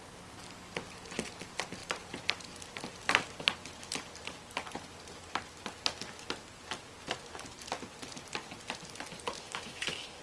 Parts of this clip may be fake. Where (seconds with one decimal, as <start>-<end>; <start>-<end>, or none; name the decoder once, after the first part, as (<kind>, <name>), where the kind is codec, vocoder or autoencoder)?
9.4-10.2 (codec, HILCodec)